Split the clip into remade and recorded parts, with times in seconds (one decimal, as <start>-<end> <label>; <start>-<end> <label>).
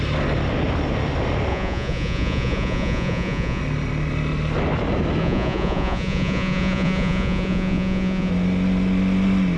0.0-1.5 recorded; 1.5-3.6 remade; 3.6-5.2 recorded; 5.2-8.3 remade; 8.3-9.6 recorded